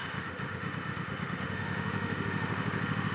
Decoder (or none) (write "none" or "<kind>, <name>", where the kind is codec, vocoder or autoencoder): autoencoder, DAC-VAE